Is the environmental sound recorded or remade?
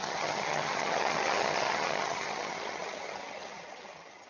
remade